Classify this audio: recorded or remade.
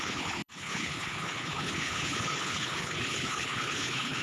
remade